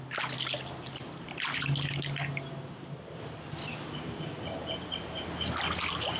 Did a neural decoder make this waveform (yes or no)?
no